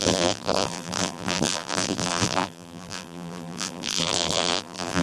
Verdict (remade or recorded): remade